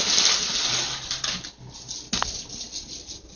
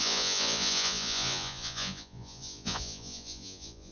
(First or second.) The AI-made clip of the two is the second